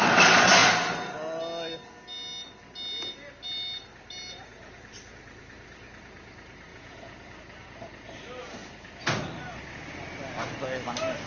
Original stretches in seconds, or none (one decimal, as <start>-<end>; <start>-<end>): 0.0-6.7; 7.4-11.3